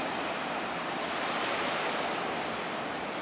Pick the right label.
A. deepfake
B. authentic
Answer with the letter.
B